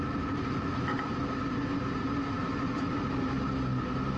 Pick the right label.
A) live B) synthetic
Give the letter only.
A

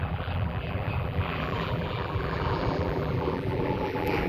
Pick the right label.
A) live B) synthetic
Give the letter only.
B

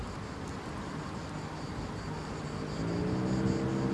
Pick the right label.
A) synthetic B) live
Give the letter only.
B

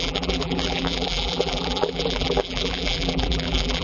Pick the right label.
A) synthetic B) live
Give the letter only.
A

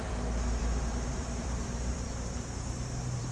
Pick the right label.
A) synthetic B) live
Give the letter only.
A